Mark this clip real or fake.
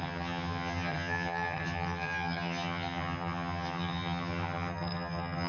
fake